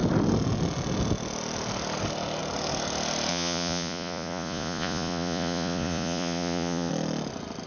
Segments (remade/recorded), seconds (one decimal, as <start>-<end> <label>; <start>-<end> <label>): 0.0-3.3 recorded; 3.3-6.9 remade; 6.9-7.7 recorded